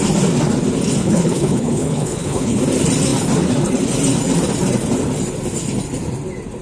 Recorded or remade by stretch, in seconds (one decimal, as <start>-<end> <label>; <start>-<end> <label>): 0.0-1.0 recorded; 1.0-2.6 remade; 2.6-6.6 recorded